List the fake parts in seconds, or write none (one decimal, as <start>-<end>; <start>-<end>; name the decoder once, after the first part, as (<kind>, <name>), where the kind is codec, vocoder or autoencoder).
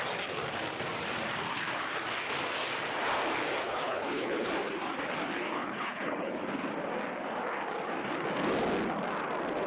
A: 3.6-4.5 (codec, HILCodec); 5.6-6.3